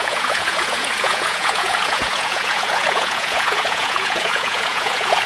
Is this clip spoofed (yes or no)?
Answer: yes